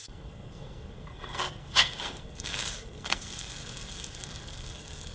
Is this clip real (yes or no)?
no